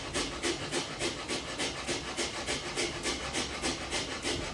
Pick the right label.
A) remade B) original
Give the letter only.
B